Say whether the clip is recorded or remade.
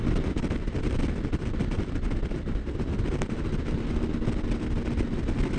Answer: recorded